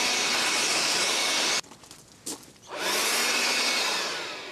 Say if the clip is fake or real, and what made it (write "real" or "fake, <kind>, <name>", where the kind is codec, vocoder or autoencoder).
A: real